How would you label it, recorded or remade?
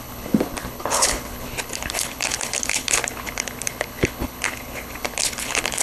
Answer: remade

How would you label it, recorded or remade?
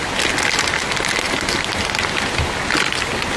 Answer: recorded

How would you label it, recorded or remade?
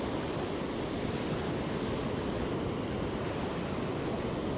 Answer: recorded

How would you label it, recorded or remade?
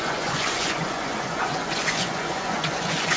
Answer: remade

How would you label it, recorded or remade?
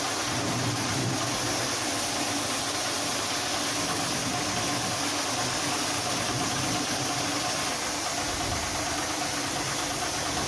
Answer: recorded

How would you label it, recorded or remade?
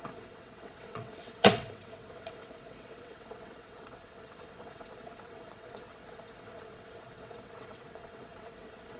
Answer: remade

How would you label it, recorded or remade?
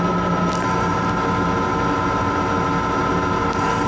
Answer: recorded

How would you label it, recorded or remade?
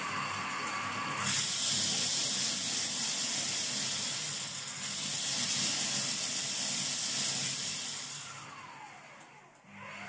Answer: recorded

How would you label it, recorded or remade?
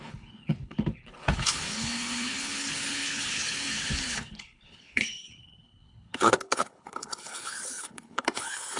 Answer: remade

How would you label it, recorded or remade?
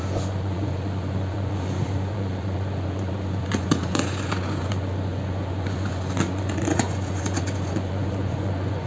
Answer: remade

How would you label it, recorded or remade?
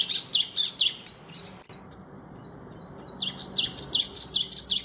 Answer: recorded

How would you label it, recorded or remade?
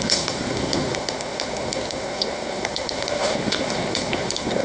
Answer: remade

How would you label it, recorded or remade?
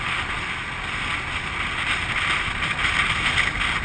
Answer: recorded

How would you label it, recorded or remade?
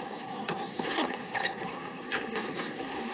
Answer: remade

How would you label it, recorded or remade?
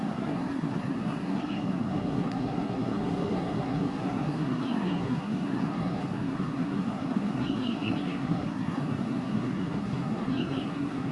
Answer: remade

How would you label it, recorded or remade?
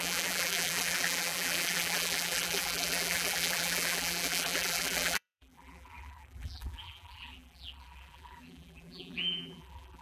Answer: remade